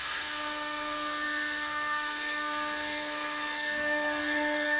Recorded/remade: remade